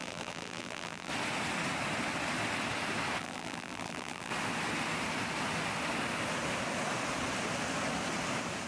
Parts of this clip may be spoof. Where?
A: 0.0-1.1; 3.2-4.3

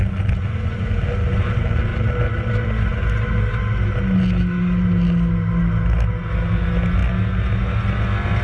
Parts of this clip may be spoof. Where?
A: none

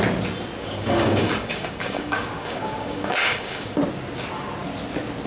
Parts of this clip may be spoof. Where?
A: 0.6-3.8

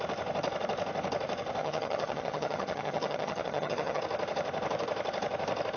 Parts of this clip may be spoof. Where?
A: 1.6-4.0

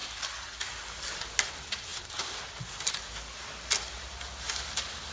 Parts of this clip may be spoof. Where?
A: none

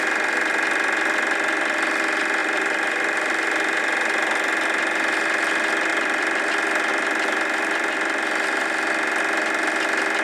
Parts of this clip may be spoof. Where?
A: 2.4-3.8; 5.9-6.5; 6.9-8.9

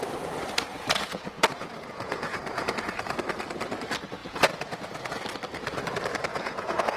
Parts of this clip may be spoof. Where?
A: 0.7-3.1; 4.2-5.1; 6.3-7.0